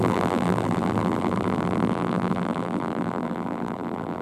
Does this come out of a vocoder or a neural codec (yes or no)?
yes